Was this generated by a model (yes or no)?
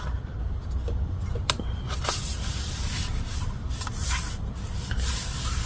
no